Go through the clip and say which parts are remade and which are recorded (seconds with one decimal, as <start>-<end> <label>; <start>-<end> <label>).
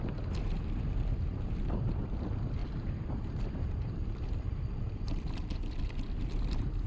0.0-6.9 remade